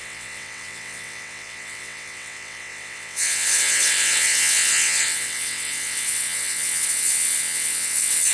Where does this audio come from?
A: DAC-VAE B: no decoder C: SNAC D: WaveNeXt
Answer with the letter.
D